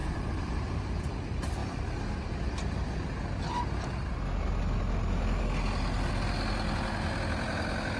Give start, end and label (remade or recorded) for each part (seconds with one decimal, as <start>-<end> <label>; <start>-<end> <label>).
0.0-1.0 remade; 1.0-8.0 recorded